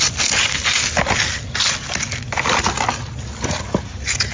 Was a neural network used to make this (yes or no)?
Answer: no